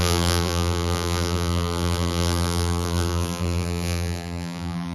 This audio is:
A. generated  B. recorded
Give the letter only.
A